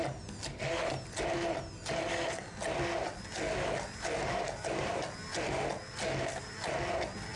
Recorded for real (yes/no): yes